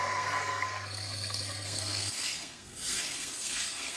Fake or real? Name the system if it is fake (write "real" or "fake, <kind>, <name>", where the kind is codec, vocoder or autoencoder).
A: fake, codec, SNAC